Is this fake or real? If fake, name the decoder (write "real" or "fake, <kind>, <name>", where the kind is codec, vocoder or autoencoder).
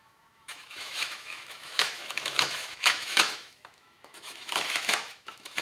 fake, autoencoder, DAC-VAE